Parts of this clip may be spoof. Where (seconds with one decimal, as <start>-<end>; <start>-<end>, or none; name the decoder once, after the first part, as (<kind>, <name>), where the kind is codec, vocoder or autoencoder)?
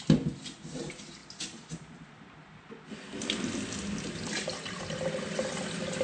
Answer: none